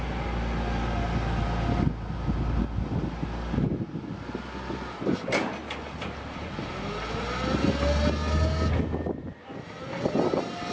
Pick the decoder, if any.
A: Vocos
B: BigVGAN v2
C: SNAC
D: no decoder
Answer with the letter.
D